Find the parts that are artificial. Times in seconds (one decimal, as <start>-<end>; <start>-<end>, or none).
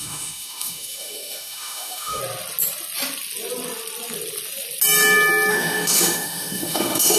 0.0-2.2; 5.5-7.2